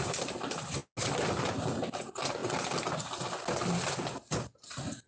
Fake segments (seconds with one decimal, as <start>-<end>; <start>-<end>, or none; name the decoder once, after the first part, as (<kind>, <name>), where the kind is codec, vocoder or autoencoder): none